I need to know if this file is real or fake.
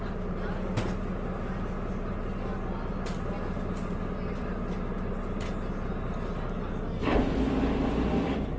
real